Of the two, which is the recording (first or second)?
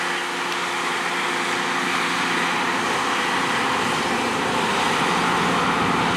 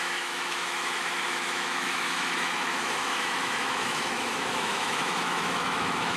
first